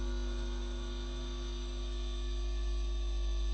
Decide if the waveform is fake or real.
fake